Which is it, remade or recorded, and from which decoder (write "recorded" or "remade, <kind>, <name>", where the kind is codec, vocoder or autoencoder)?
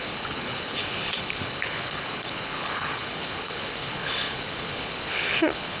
remade, codec, HILCodec